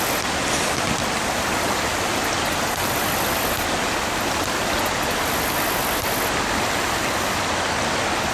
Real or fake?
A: real